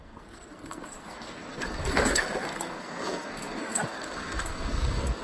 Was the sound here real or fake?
fake